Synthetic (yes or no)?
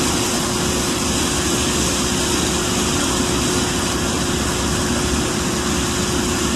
no